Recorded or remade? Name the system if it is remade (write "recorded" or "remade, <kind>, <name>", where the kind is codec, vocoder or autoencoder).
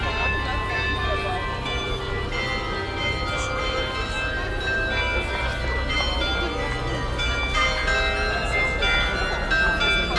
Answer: recorded